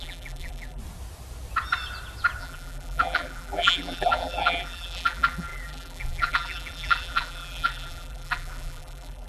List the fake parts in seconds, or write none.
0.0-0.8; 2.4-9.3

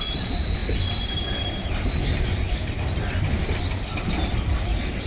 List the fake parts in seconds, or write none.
0.0-5.1

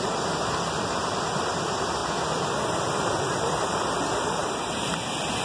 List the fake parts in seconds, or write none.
none

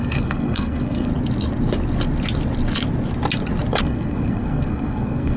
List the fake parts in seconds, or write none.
0.0-1.1; 3.8-5.4

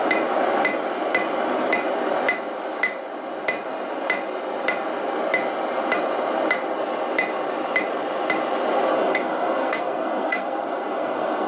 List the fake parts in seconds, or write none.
8.9-11.5

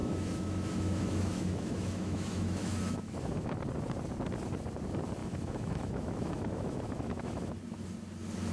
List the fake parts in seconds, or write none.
0.0-3.5; 5.2-7.5